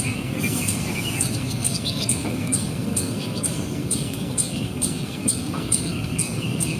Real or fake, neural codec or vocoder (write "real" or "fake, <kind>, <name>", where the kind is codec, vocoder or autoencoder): fake, codec, SNAC